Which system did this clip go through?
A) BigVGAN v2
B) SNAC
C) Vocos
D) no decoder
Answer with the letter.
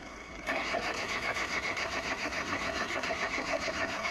B